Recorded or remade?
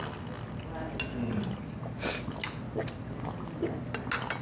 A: recorded